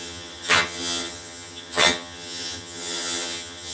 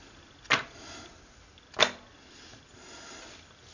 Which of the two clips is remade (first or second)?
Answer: first